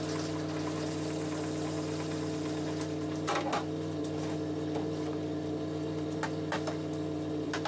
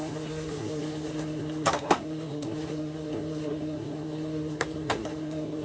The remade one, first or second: second